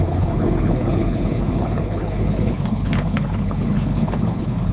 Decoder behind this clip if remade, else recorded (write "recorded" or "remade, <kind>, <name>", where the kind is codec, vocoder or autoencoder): remade, codec, HILCodec